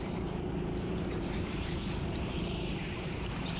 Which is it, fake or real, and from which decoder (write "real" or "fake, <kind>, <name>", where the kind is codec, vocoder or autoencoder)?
fake, vocoder, BigVGAN v2